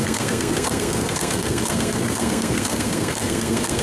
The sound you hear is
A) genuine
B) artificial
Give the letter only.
B